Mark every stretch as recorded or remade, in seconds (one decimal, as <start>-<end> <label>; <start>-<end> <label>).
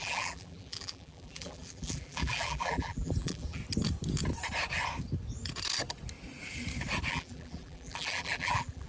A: 0.0-3.6 remade; 3.6-7.1 recorded; 7.1-8.9 remade